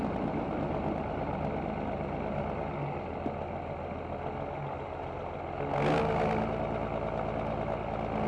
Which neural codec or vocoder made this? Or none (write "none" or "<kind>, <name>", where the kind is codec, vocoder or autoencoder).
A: none